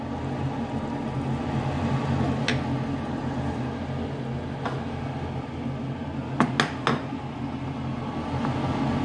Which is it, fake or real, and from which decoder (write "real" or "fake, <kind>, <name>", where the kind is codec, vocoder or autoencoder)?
real